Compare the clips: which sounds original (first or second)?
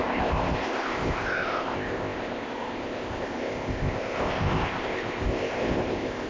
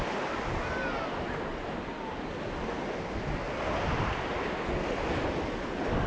second